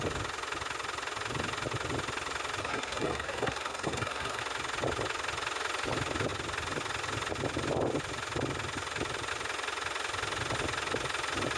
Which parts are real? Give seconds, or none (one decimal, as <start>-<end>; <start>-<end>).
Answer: 0.0-2.6; 4.4-11.6